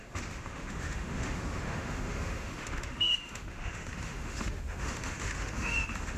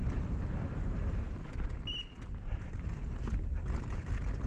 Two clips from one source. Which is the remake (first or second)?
first